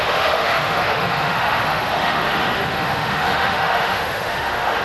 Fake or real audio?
fake